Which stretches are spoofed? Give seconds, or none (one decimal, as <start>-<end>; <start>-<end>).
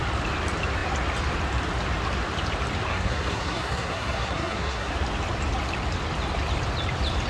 2.9-4.9